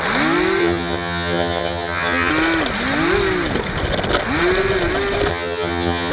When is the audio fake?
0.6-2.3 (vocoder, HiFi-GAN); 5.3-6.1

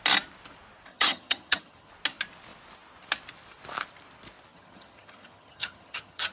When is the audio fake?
0.9-1.9 (vocoder, HiFi-GAN); 4.5-6.3

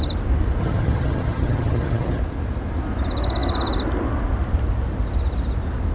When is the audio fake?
0.6-2.2 (vocoder, HiFi-GAN)

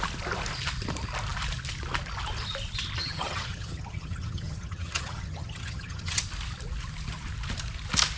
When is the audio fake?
3.0-6.2 (vocoder, HiFi-GAN)